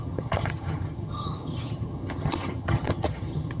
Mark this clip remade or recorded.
remade